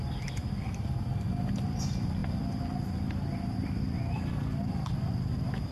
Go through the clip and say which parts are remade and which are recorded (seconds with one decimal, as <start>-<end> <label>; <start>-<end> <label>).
0.0-5.7 recorded